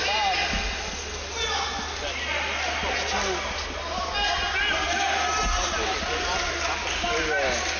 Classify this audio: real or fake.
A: real